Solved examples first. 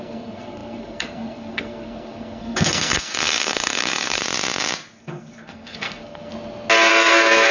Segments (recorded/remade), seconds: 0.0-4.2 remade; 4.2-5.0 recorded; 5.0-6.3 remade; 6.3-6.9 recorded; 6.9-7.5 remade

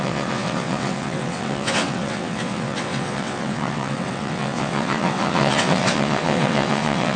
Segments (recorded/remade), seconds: 0.0-7.2 remade

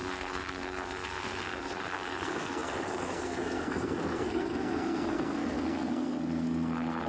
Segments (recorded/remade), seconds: 0.0-7.1 remade